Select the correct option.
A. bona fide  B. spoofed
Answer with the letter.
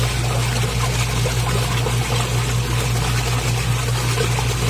A